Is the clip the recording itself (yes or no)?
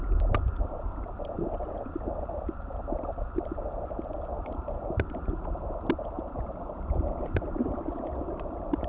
yes